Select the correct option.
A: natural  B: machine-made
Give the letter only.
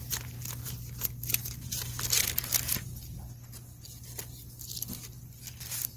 A